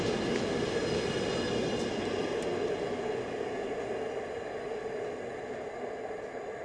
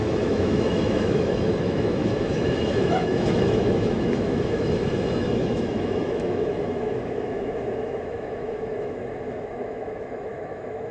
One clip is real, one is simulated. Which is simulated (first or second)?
second